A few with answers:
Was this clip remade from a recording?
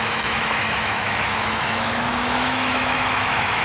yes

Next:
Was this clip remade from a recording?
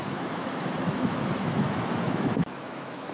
yes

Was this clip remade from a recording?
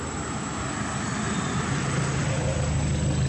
no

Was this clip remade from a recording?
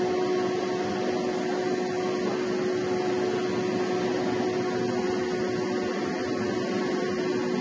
no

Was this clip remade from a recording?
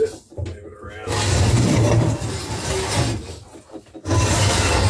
no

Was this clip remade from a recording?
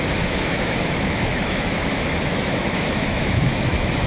yes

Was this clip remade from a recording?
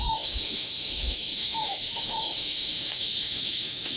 yes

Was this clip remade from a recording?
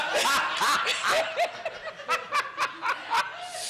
no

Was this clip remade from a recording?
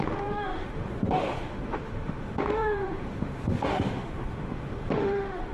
yes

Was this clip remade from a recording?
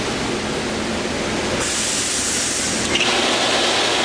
no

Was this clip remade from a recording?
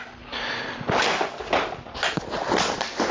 no